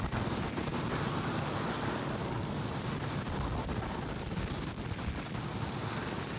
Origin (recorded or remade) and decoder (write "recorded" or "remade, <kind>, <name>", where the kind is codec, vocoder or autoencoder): recorded